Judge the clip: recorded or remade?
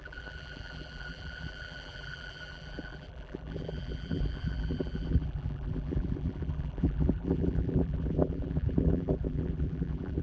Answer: remade